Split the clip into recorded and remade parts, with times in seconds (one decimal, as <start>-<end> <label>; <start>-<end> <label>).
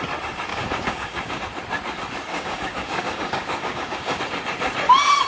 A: 0.0-0.5 recorded; 0.5-1.4 remade; 1.4-2.3 recorded; 2.3-4.2 remade; 4.2-5.3 recorded